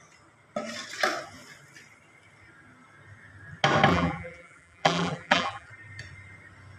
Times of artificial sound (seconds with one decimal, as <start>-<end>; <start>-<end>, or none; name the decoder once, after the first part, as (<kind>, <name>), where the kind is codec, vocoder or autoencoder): 3.9-5.7 (vocoder, BigVGAN v2)